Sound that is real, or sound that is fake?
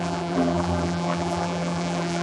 fake